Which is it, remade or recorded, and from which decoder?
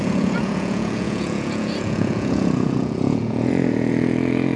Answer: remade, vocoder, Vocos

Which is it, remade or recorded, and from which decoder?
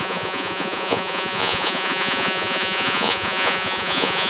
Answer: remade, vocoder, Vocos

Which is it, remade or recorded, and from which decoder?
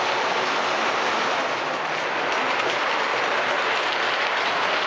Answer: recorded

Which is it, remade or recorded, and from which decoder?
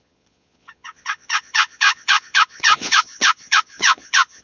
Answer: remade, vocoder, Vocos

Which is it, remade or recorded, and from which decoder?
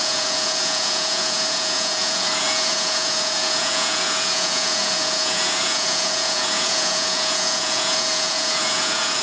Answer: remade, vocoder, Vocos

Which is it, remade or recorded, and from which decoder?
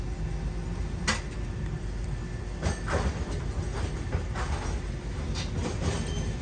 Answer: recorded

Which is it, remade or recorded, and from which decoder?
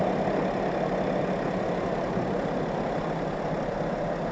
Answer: recorded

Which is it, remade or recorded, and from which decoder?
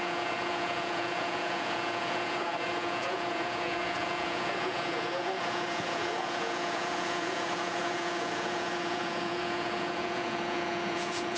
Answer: remade, vocoder, Vocos